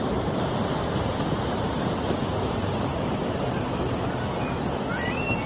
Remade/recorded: recorded